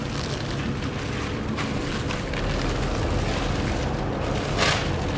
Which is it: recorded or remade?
recorded